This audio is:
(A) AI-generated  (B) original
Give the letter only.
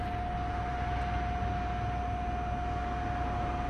B